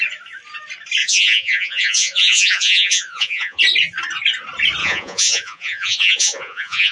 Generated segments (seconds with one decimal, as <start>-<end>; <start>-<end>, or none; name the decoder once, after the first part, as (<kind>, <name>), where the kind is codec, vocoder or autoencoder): 1.0-3.6 (vocoder, Vocos); 4.8-6.9